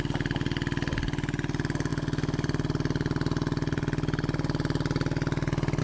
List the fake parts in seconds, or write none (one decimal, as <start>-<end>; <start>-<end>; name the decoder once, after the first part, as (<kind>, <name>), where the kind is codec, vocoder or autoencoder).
none